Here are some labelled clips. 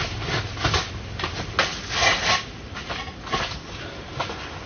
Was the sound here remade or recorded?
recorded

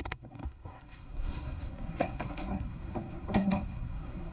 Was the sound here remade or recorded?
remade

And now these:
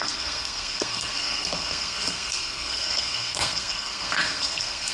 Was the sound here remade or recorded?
remade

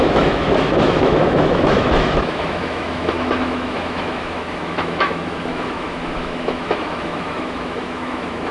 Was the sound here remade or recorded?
remade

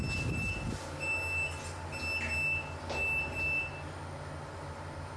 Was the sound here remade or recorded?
recorded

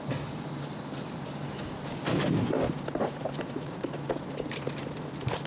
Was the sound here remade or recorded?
recorded